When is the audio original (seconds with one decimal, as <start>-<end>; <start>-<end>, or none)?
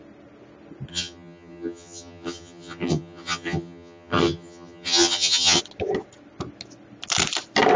0.0-0.9; 5.6-7.8